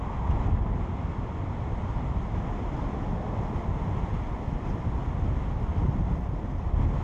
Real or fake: real